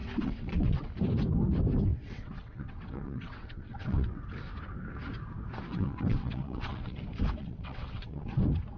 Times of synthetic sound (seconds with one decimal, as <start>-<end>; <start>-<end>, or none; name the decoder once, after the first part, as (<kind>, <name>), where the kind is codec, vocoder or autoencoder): 0.0-0.9 (vocoder, WaveNeXt); 1.9-4.2; 5.7-7.0; 7.4-8.3